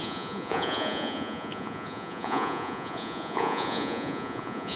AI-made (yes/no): yes